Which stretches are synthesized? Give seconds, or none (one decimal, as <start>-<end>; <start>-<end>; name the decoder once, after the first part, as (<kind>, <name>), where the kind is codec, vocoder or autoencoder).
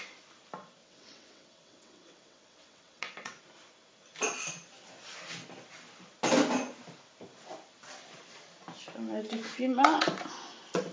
0.8-3.4 (vocoder, WaveNeXt); 9.5-10.1